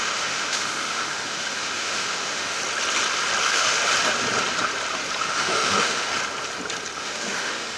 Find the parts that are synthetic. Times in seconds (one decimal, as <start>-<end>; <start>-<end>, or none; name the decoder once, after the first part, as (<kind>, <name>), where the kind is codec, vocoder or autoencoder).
0.0-2.6 (autoencoder, DAC-VAE); 3.4-3.8; 5.2-6.1; 7.0-7.8